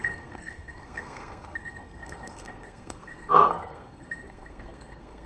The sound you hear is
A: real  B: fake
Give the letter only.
B